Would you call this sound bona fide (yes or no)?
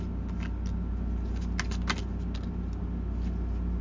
yes